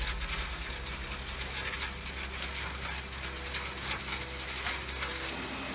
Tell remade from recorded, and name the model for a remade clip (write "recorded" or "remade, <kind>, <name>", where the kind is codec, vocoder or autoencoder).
recorded